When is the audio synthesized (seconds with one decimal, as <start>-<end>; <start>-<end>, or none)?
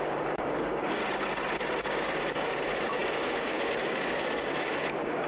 0.0-1.0; 1.8-5.3